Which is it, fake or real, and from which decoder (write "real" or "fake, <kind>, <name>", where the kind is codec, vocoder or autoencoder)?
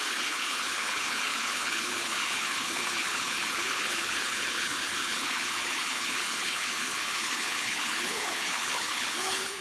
fake, codec, HILCodec